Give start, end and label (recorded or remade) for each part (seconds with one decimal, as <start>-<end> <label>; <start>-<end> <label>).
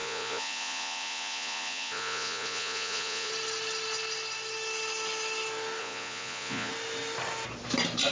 0.0-3.3 remade; 3.3-5.8 recorded; 5.8-6.7 remade; 6.7-8.1 recorded